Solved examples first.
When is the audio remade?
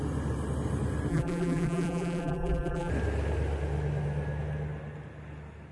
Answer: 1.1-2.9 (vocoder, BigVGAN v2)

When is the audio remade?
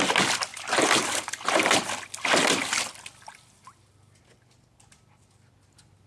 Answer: 0.5-4.2 (vocoder, BigVGAN v2)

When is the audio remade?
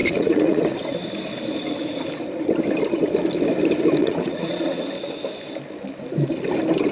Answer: 0.0-0.6 (vocoder, Vocos); 4.0-4.8